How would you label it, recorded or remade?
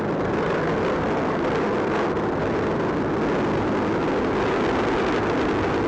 recorded